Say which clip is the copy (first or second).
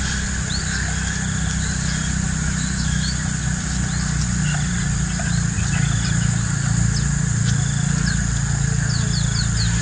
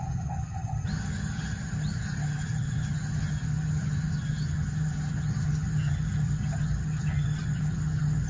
second